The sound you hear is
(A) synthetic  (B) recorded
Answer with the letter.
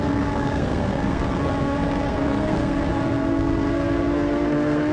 A